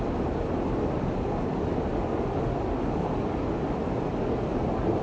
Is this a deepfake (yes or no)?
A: no